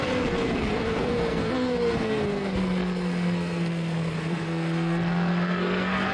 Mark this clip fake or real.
fake